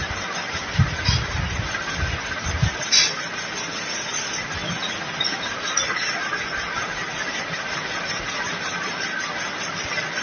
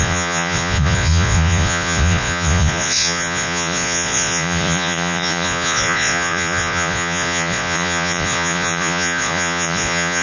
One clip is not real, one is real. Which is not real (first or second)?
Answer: second